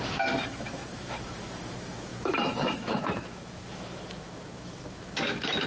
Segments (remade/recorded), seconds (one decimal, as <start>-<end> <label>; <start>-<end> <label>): 0.0-5.7 remade